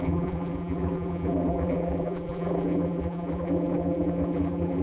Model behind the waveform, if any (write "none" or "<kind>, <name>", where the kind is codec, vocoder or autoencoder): vocoder, BigVGAN v2